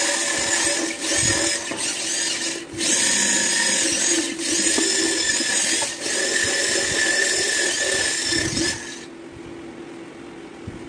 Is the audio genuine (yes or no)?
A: yes